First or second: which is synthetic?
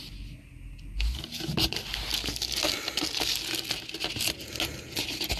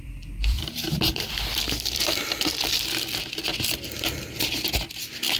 second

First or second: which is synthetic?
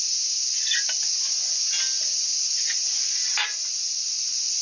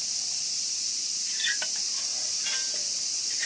second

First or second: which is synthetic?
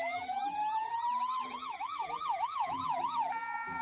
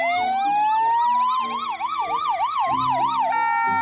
first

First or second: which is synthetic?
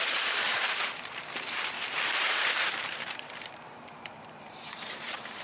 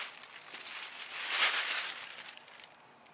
first